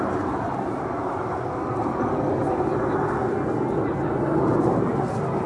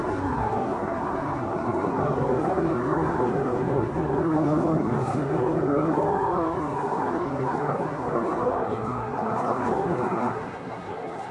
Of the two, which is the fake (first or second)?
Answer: second